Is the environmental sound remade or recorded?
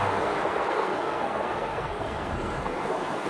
remade